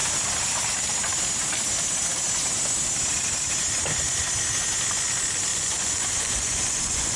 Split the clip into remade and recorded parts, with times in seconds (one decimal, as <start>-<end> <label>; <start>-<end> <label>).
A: 0.0-5.5 recorded; 5.5-7.2 remade